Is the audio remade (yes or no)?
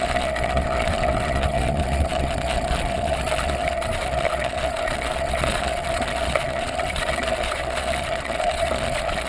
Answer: yes